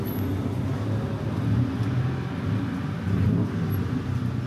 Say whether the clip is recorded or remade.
recorded